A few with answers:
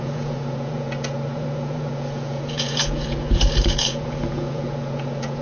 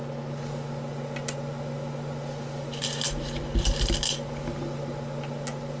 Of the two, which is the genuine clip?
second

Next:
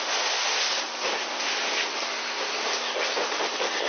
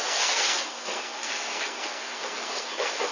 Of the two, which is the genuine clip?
first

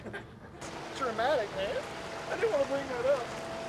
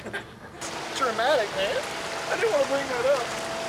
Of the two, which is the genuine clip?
first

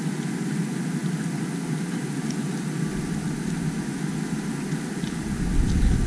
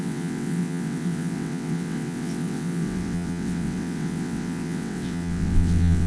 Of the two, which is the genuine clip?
first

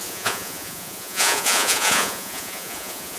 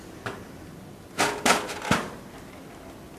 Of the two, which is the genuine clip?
second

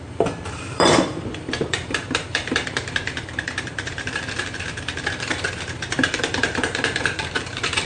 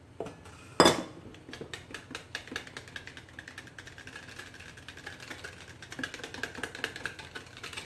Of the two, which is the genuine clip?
second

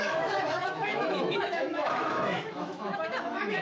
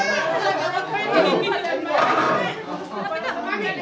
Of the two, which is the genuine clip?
second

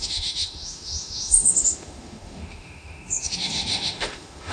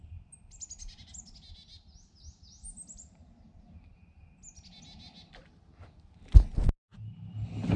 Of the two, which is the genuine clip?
second